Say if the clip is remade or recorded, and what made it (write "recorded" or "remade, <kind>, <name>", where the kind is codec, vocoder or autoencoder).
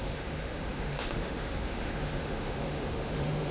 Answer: remade, autoencoder, DAC-VAE